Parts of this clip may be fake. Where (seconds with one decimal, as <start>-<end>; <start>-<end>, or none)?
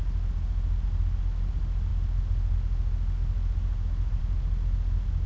none